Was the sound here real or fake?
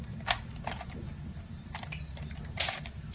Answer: real